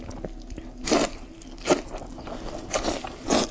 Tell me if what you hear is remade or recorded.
recorded